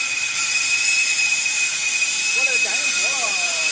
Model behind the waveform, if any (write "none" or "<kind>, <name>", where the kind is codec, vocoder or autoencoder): vocoder, BigVGAN v2